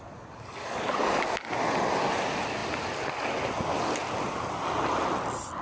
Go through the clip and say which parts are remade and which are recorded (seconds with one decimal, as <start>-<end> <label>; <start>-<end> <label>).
0.0-5.6 recorded